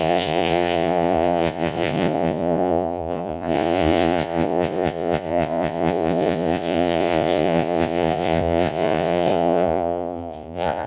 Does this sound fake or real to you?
fake